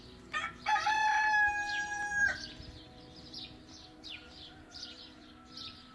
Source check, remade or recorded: remade